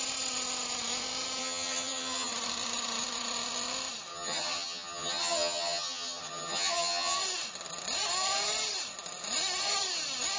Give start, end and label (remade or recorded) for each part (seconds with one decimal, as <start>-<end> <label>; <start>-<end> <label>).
0.0-1.4 recorded; 1.4-2.3 remade; 2.3-4.1 recorded; 4.1-7.2 remade; 7.2-10.4 recorded